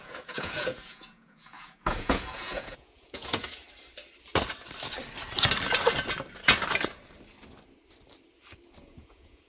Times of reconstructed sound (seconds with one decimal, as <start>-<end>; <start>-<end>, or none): 0.0-3.6; 8.8-9.5